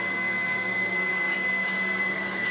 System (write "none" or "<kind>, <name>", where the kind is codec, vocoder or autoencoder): codec, SNAC